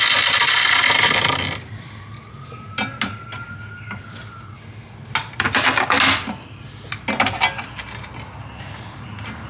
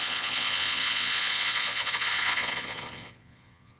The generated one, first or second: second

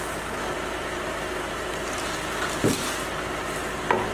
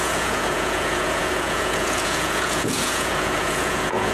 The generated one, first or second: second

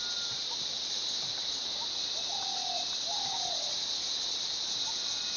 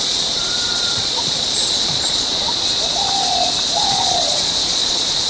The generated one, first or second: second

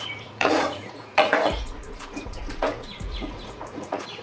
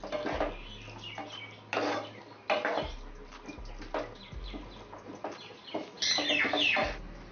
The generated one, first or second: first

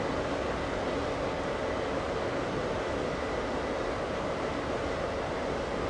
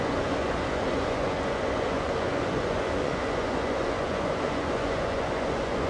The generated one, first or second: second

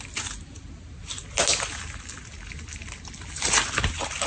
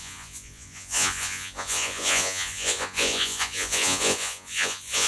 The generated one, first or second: second